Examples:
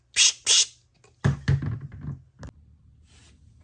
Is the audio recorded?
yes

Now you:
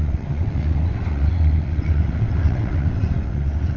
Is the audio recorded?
no